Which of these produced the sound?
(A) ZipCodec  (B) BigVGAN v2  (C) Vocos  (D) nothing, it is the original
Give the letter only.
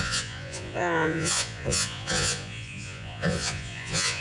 C